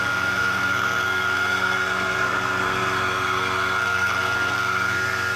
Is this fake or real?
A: fake